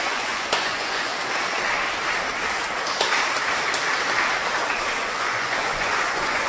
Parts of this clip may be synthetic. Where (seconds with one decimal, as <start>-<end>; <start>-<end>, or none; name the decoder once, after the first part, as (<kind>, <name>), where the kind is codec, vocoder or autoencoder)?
0.0-1.1 (vocoder, Vocos); 5.0-6.5